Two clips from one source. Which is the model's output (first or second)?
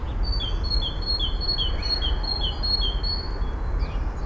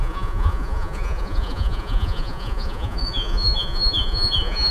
second